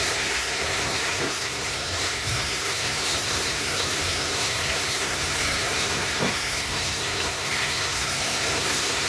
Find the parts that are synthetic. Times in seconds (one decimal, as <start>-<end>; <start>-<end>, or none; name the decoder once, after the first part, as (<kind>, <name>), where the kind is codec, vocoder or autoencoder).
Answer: 0.0-9.1 (codec, SNAC)